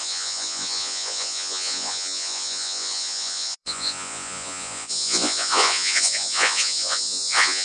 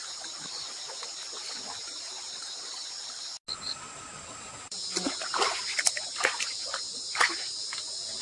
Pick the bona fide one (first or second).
second